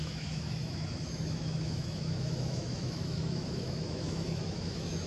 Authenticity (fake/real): fake